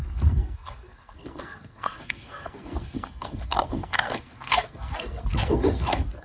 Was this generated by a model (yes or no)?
yes